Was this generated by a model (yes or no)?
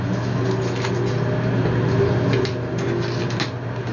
no